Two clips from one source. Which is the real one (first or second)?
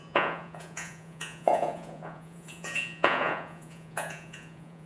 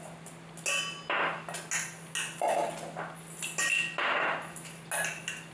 second